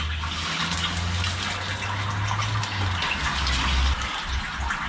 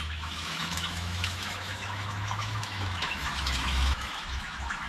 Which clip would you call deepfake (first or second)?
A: second